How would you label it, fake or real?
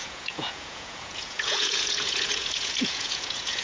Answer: fake